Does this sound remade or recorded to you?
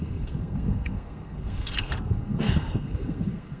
remade